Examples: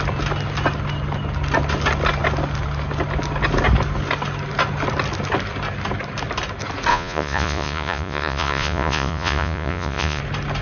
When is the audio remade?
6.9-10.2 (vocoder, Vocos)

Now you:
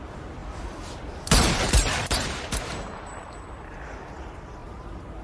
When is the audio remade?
0.4-2.7 (vocoder, BigVGAN v2); 4.6-5.2

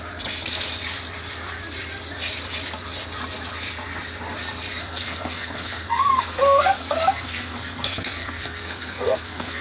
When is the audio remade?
4.8-9.6 (codec, SNAC)

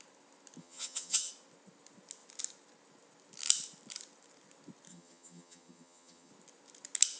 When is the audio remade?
0.6-1.3 (vocoder, HiFi-GAN); 4.9-6.3

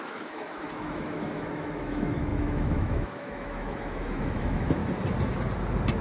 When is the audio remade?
0.0-4.8 (autoencoder, DAC-VAE)

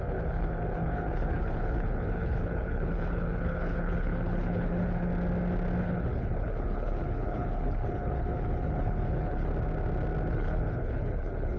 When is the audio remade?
0.0-5.1 (codec, HILCodec); 5.8-9.5; 10.3-11.6